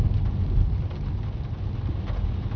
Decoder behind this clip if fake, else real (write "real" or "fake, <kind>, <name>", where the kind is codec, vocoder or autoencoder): real